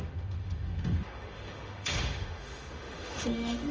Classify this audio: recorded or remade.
remade